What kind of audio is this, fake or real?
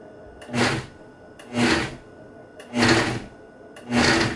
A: real